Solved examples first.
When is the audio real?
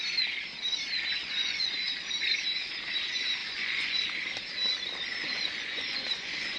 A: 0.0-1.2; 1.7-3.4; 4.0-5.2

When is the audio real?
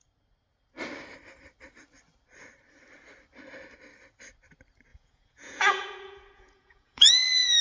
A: 0.0-4.9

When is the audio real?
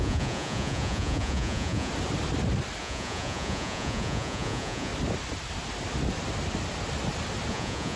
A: 1.9-2.8; 4.9-7.5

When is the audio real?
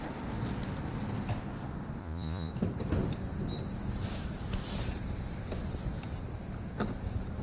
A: 0.0-2.0; 2.5-7.4